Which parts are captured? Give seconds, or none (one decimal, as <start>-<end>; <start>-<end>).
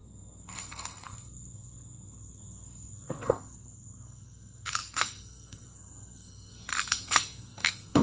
none